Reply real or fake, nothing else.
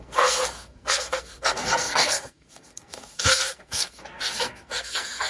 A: fake